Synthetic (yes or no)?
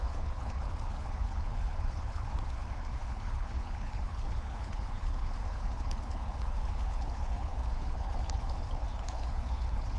yes